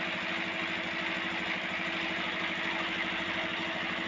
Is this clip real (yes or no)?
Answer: yes